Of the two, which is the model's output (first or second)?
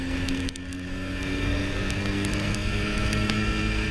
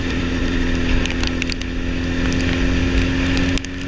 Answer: first